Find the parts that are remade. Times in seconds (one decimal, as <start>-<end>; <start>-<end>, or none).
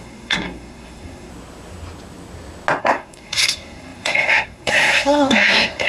0.0-1.3; 2.8-5.9